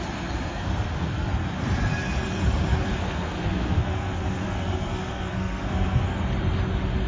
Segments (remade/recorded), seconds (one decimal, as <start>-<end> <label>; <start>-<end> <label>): 0.0-0.5 recorded; 0.5-1.3 remade; 1.3-2.9 recorded; 2.9-6.2 remade; 6.2-7.1 recorded